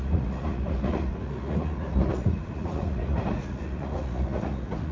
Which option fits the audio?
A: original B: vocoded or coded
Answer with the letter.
B